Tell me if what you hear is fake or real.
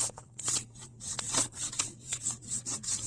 fake